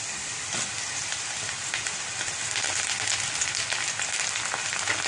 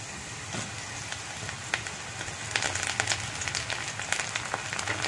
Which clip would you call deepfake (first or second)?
first